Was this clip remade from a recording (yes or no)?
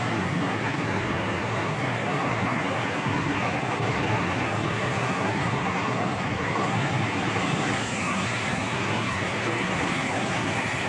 yes